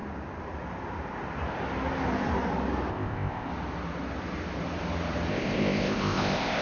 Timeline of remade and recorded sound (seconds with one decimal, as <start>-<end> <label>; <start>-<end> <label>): 0.0-2.9 recorded; 2.9-3.5 remade; 3.5-5.3 recorded; 5.3-6.6 remade